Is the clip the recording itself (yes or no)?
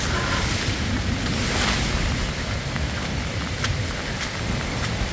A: yes